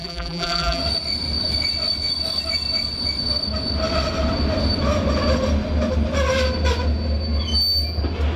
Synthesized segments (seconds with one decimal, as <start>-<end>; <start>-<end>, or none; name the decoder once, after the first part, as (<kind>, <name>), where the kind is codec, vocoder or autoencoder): 0.0-0.8 (vocoder, BigVGAN v2)